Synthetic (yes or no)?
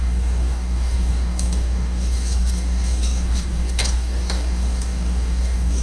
yes